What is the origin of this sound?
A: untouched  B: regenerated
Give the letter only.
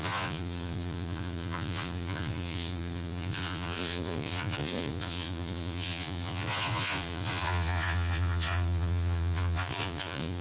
B